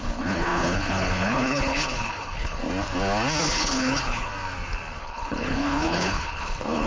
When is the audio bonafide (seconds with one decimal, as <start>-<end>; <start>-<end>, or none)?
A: 2.6-3.4; 4.3-5.0